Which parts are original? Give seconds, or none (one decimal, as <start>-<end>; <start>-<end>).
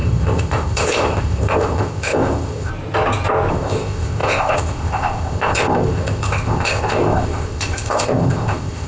2.7-3.5